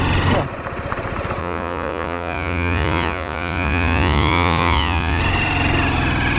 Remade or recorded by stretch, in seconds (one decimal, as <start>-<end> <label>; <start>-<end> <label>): 0.0-1.4 recorded; 1.4-5.2 remade; 5.2-6.4 recorded